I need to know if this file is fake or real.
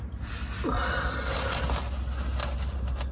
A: real